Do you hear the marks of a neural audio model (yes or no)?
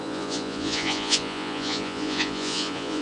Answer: yes